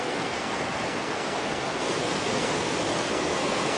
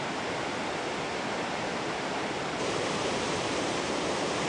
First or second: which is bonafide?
second